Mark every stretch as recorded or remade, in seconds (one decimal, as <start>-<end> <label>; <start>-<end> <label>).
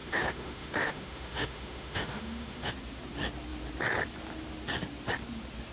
0.0-2.7 remade; 2.7-5.7 recorded